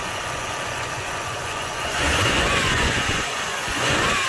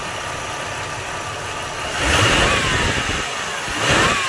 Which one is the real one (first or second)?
second